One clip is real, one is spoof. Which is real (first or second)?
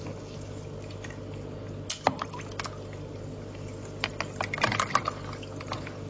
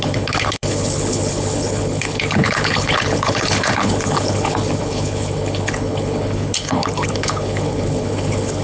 first